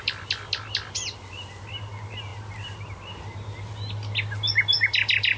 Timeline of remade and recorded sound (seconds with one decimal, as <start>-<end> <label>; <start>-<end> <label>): 0.0-5.4 recorded